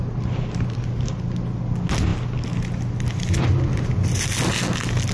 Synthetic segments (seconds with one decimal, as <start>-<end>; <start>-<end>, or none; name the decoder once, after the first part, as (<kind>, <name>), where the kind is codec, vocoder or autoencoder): none